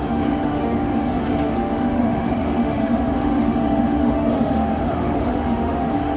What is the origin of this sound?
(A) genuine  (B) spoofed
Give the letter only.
B